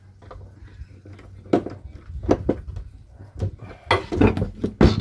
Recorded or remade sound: recorded